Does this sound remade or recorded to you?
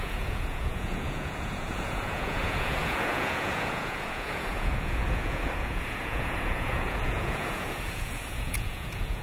remade